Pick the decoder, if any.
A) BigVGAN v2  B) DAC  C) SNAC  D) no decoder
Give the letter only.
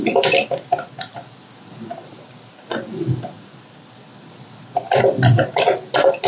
D